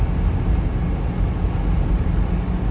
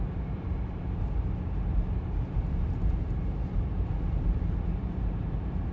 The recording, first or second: first